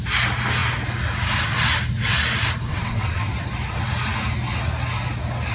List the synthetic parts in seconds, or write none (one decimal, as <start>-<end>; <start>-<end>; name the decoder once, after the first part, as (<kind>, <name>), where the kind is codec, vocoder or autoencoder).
2.7-3.3 (vocoder, WaveNeXt)